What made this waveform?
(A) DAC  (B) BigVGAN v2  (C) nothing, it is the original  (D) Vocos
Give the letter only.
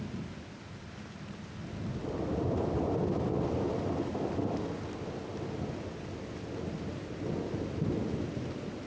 C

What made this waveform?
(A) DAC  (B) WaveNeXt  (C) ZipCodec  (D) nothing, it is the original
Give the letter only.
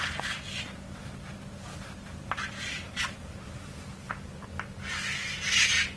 D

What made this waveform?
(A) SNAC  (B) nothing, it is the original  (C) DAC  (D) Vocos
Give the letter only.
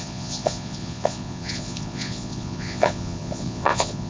D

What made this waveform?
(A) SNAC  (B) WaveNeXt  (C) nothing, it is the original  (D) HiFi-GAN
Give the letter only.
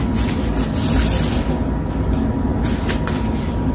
C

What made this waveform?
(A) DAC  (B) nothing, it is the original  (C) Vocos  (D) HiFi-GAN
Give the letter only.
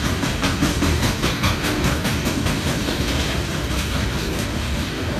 A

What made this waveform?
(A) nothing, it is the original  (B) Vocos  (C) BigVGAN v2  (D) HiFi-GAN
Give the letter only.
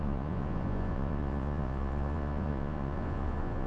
B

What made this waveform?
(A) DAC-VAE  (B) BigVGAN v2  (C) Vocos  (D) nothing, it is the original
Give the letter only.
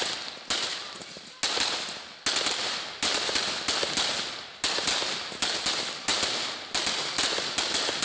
D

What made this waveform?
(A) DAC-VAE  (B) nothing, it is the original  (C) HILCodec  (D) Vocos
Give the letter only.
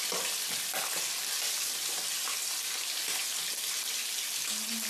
B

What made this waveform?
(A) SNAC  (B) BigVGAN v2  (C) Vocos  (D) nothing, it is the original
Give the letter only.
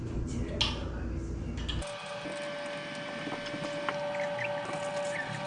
D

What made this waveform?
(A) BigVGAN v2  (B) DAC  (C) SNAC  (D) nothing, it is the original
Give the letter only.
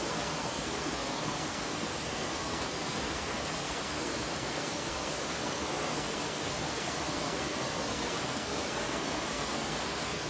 C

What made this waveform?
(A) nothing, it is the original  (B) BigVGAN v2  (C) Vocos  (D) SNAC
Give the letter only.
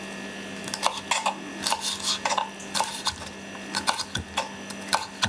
A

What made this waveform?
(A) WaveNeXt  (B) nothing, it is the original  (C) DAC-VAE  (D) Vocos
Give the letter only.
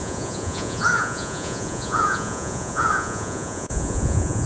D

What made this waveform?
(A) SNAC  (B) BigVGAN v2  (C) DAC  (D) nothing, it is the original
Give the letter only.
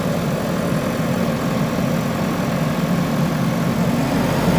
D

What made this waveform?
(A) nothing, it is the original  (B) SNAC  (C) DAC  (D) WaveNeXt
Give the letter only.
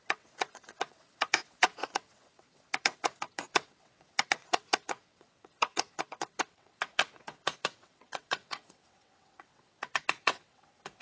D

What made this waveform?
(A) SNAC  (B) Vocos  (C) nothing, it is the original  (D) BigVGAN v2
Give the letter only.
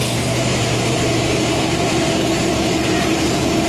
D